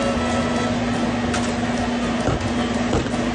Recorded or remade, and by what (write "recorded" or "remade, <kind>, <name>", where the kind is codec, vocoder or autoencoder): recorded